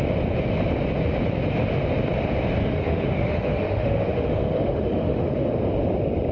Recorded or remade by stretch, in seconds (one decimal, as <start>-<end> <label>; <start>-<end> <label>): 0.0-2.6 recorded; 2.6-5.5 remade; 5.5-6.3 recorded